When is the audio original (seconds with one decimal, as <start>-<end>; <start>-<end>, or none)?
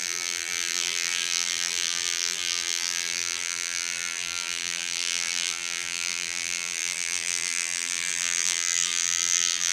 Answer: none